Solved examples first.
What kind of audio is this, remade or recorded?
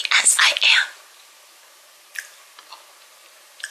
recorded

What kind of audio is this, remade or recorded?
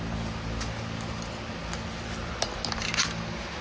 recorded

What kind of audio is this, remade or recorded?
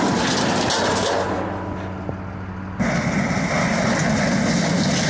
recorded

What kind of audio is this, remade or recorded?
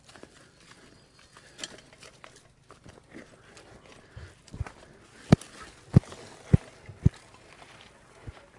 recorded